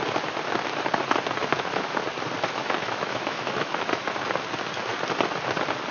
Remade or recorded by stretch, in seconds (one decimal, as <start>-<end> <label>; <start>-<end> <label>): 0.0-1.4 recorded; 1.4-2.0 remade; 2.0-2.6 recorded; 2.6-4.1 remade; 4.1-5.9 recorded